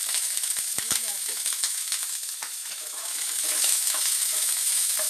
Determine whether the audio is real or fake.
fake